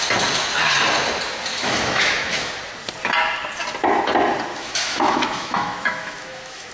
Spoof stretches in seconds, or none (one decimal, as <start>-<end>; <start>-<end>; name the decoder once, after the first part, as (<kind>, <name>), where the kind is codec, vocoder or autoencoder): 1.5-2.5 (autoencoder, DAC-VAE); 4.5-6.7